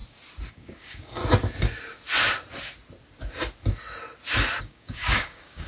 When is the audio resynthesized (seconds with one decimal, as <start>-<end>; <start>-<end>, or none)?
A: 0.5-1.2; 4.6-5.7